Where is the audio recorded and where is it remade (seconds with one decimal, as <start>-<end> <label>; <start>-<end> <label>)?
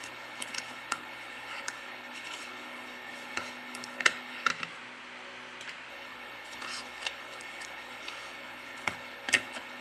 0.0-4.5 remade; 4.5-5.9 recorded; 5.9-9.8 remade